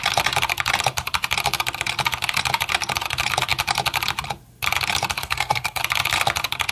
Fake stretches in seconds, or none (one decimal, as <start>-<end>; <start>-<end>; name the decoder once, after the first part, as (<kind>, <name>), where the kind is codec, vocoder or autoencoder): 5.2-5.8 (codec, SNAC)